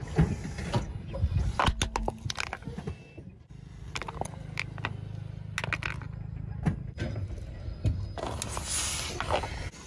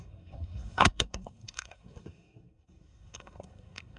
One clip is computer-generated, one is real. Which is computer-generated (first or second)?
second